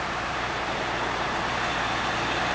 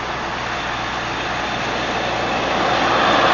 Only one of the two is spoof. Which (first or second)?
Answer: first